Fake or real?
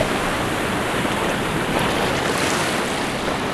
real